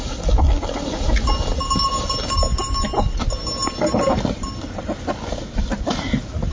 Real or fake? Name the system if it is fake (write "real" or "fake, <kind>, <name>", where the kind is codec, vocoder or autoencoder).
real